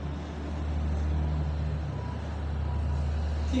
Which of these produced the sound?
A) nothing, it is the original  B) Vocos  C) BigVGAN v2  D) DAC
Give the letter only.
A